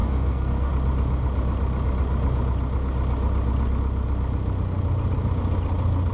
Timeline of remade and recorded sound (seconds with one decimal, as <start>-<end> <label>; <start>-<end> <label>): 0.0-0.7 remade; 0.7-6.1 recorded